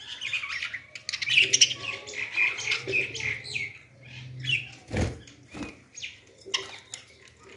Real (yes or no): yes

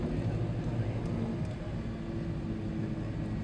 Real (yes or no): yes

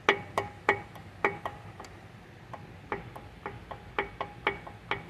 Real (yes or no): yes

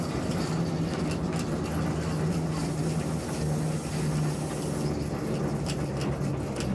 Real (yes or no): yes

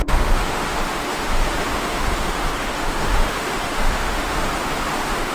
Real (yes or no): no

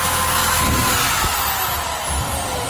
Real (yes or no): yes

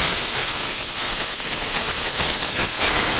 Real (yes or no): no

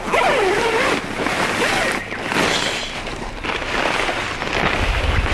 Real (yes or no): yes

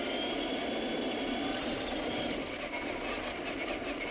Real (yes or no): yes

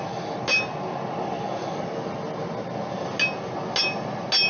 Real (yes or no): yes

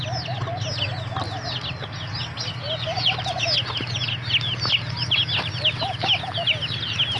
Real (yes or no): yes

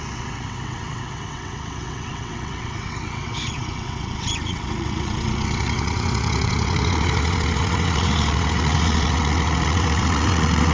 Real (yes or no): no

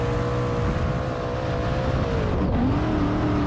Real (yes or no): yes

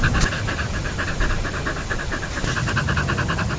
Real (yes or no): yes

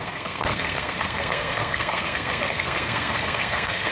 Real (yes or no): no